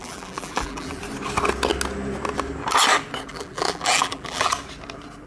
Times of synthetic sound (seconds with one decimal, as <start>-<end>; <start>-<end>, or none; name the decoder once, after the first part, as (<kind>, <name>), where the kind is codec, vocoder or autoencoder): 0.0-1.0 (vocoder, BigVGAN v2); 3.3-4.5